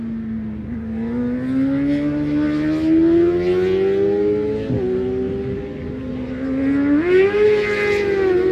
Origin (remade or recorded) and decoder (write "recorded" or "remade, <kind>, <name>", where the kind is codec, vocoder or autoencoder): recorded